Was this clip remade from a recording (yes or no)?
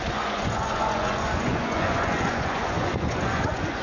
yes